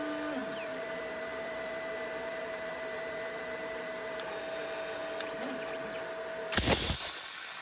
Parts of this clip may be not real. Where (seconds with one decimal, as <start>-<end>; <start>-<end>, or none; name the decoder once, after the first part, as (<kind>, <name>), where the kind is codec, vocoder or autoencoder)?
0.4-4.3 (vocoder, BigVGAN v2)